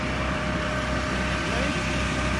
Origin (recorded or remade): remade